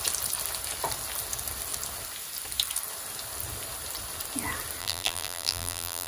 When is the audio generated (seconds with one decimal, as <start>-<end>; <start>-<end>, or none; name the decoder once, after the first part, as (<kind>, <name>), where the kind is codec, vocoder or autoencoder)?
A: 4.8-6.1 (vocoder, BigVGAN v2)